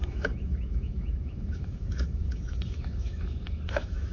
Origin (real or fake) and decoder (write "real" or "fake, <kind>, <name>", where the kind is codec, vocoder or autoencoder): fake, autoencoder, DAC-VAE